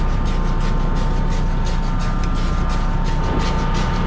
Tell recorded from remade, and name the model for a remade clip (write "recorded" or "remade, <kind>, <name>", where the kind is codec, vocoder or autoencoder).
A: recorded